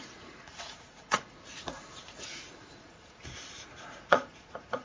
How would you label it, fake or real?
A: fake